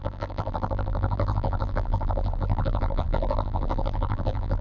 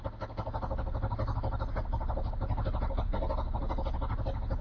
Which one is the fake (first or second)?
first